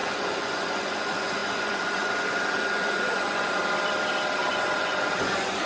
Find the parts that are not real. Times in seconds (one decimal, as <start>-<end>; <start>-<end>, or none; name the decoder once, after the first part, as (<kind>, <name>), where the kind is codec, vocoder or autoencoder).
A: 0.0-3.6 (vocoder, Vocos); 4.5-5.7